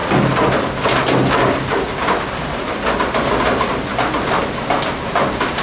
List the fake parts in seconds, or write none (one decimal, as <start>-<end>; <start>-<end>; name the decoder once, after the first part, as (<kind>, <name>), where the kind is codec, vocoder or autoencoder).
none